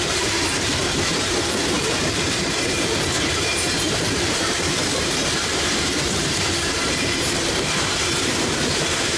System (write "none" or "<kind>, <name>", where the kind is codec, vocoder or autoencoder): vocoder, BigVGAN v2